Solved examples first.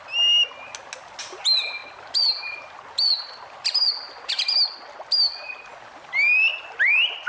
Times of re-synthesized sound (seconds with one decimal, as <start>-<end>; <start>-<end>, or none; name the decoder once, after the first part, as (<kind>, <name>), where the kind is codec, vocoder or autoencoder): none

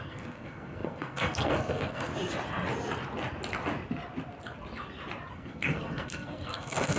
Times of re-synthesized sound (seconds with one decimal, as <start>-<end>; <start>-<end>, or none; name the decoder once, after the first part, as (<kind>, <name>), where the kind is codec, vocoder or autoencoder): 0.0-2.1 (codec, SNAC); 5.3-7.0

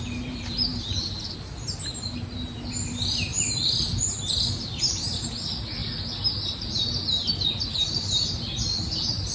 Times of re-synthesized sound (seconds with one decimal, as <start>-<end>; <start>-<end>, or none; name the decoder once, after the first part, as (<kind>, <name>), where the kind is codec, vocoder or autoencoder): none